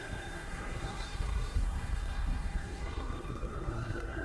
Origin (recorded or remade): remade